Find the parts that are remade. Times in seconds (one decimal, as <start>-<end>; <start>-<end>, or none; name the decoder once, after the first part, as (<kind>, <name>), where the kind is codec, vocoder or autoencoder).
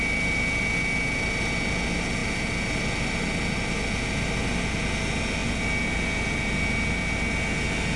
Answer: none